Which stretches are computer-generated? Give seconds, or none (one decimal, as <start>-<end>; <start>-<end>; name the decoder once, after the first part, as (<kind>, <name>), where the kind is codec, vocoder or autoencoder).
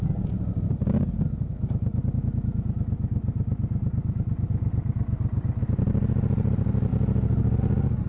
5.6-6.5 (vocoder, BigVGAN v2); 6.9-7.6